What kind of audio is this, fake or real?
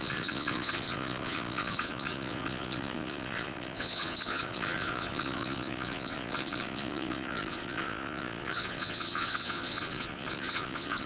fake